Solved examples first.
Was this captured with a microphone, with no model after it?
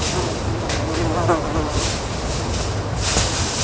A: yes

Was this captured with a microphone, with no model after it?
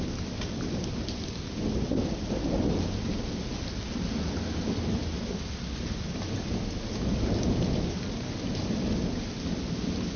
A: yes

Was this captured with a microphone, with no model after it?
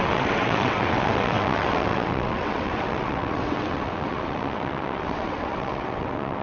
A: no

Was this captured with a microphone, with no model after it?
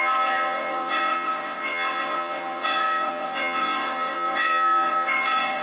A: no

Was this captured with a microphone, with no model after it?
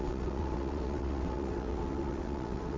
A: no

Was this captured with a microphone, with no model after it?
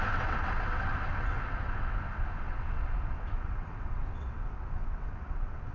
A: no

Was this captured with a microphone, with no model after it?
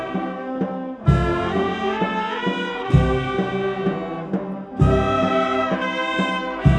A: yes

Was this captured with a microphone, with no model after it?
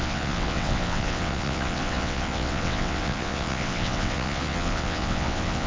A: no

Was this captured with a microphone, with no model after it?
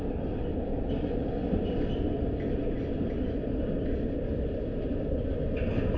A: yes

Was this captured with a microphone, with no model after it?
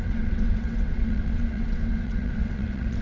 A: no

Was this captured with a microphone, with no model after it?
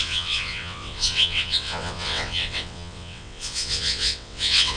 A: no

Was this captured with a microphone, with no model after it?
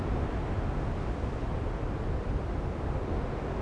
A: yes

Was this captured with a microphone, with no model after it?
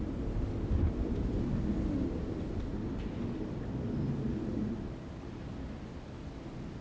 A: yes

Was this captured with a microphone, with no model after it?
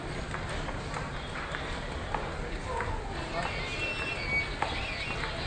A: yes